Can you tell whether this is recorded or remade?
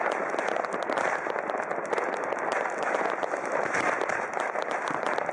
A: remade